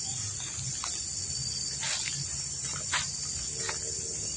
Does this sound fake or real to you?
real